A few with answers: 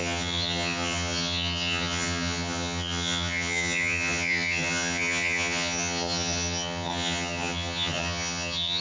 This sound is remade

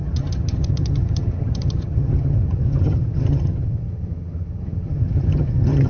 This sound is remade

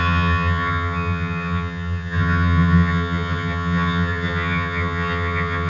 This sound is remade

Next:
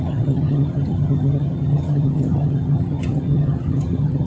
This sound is remade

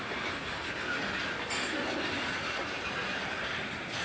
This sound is recorded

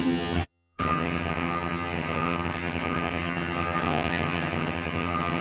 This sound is remade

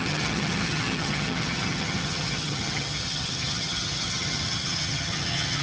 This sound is remade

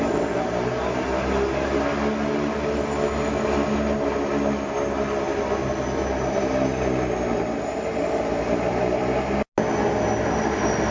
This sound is recorded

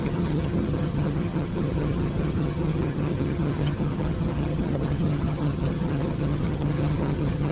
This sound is remade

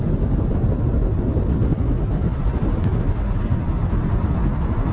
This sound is recorded